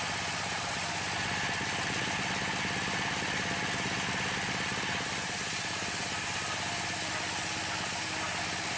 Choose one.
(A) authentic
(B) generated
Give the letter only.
A